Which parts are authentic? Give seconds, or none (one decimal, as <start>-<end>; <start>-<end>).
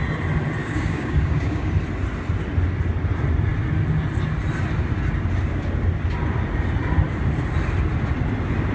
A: 0.0-0.6; 1.7-8.7